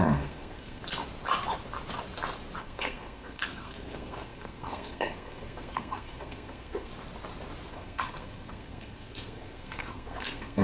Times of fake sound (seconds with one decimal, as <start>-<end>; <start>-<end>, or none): 0.0-0.8; 2.6-6.9; 7.7-10.6